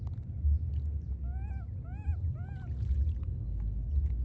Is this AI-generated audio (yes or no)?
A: no